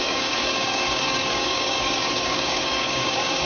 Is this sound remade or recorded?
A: remade